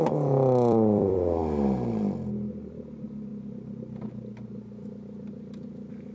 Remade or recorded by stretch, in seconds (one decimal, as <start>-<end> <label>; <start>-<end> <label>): 0.0-1.4 remade; 1.4-2.6 recorded; 2.6-3.3 remade; 3.3-4.9 recorded; 4.9-6.1 remade